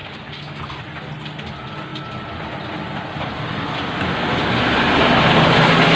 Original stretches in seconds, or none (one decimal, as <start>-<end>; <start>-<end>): 0.6-6.0